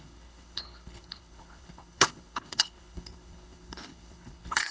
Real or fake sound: fake